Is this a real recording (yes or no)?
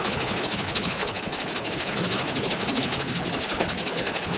no